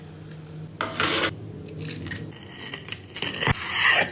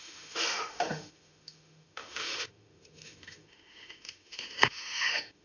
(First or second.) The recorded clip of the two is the first